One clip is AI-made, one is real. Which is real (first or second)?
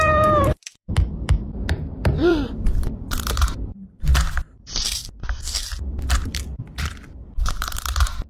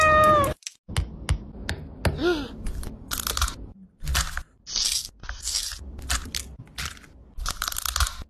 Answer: second